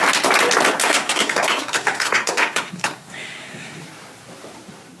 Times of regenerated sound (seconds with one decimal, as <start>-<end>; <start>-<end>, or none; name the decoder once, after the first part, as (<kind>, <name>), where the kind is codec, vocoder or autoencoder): 0.8-3.8 (codec, SNAC)